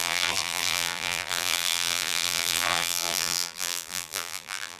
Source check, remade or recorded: remade